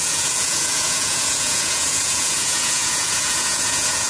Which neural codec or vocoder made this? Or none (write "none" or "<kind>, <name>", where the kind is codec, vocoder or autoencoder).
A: vocoder, Vocos